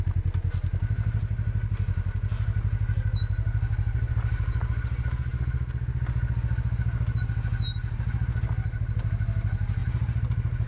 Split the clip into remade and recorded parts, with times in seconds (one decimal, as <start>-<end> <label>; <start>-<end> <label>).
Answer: 0.0-10.7 recorded